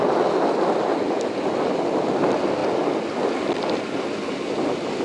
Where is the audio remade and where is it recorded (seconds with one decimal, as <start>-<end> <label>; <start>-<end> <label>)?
0.0-5.0 recorded